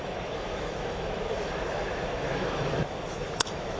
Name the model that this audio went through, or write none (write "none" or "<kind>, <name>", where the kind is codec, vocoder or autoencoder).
autoencoder, DAC-VAE